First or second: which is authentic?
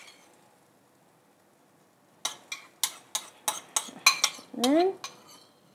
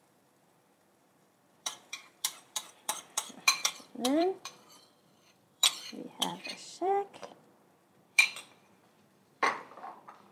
first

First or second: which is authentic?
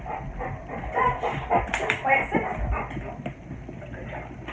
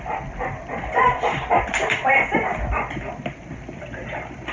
first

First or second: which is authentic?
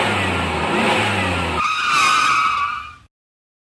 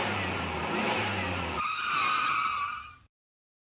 first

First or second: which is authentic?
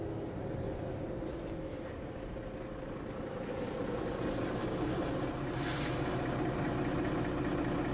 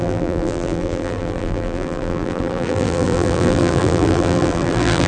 first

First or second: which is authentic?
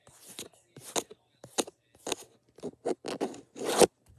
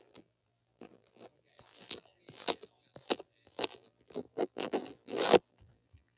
first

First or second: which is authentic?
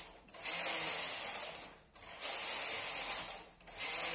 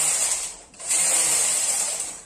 first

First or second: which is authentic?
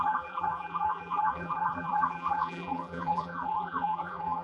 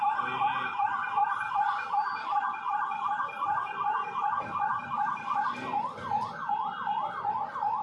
second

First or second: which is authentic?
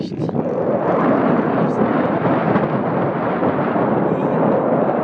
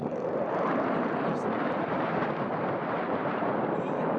first